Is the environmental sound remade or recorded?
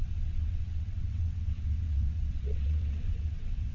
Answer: remade